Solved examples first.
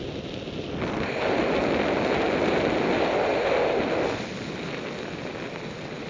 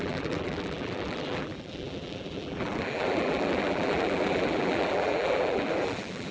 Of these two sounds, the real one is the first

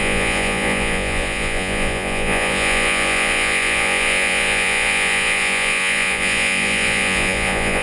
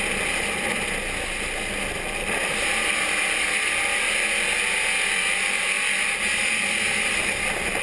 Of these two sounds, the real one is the second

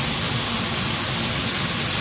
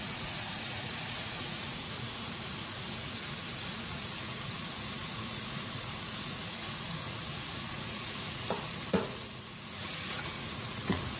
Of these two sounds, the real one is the first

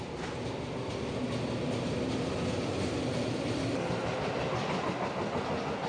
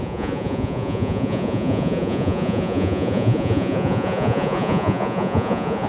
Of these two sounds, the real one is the first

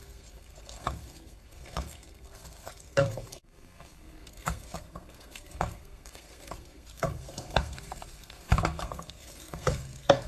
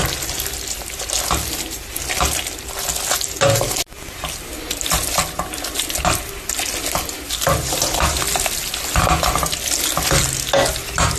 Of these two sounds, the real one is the second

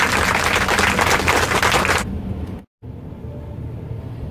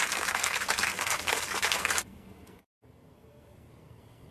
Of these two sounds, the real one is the first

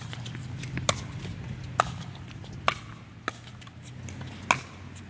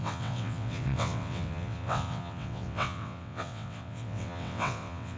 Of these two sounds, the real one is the first